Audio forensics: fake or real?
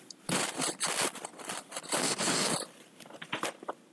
real